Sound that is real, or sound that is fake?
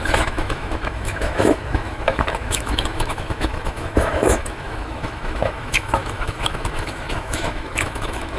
fake